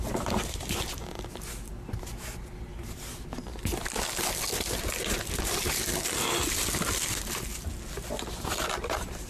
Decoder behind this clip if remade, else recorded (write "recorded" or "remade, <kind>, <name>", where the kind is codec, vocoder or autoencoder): recorded